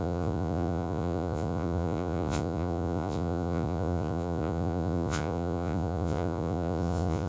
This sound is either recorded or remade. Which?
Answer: remade